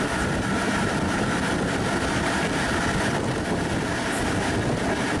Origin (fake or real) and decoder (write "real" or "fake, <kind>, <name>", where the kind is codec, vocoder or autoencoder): real